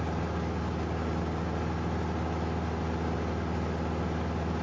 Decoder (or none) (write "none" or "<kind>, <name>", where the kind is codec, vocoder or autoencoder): none